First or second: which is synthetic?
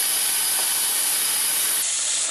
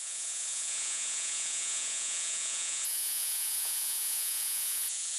second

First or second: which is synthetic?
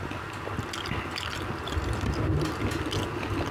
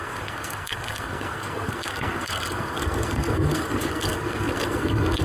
second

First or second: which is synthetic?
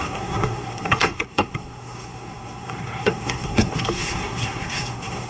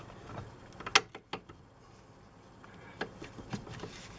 first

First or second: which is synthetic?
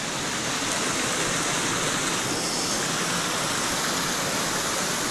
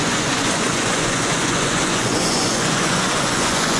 second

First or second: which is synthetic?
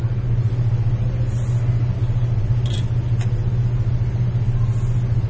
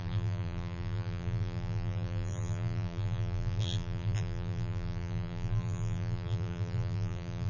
second